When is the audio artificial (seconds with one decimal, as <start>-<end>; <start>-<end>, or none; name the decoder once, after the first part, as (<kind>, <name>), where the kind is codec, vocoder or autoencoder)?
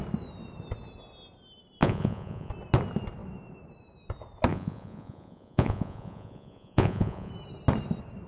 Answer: 1.8-2.5 (vocoder, Vocos); 4.5-7.3